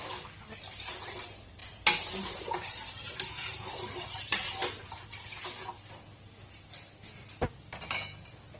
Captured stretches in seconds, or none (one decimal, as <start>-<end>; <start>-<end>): 0.0-8.6